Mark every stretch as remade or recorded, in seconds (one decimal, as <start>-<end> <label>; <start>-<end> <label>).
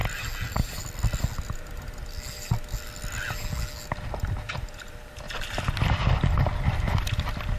0.0-7.6 recorded